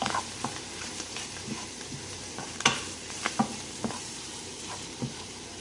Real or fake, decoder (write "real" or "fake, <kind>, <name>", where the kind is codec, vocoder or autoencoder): fake, vocoder, BigVGAN v2